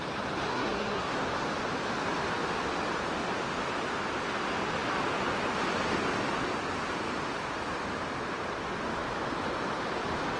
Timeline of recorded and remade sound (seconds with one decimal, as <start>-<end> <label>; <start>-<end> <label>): 0.0-0.5 recorded; 0.5-1.2 remade; 1.2-10.4 recorded